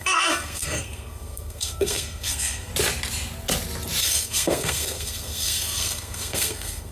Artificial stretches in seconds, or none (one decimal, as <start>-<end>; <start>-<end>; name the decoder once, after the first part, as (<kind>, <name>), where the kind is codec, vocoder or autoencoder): 0.0-2.7 (codec, SNAC); 4.0-6.9